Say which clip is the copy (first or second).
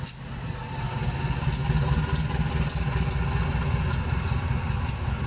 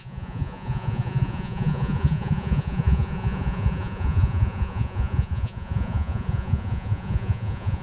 second